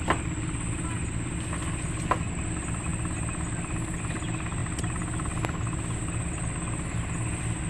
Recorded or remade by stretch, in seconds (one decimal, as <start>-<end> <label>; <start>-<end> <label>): 0.0-7.7 recorded